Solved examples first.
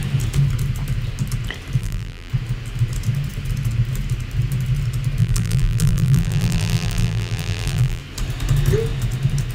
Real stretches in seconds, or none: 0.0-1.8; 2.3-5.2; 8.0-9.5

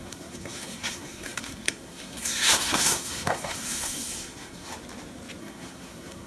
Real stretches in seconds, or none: 4.7-5.4

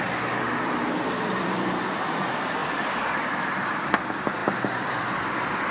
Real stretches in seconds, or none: 2.6-3.3; 4.4-5.0

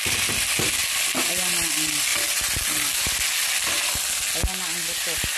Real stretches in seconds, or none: 0.0-5.4

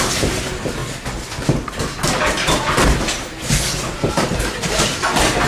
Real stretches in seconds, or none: 0.0-5.5

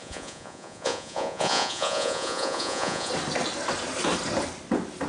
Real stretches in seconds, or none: 3.1-5.1

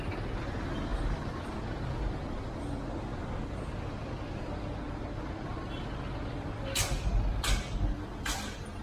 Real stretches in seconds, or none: 0.0-8.8